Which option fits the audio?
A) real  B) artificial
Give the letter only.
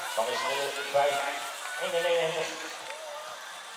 A